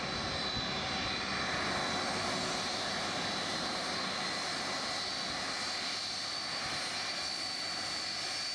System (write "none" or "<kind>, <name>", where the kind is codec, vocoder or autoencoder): none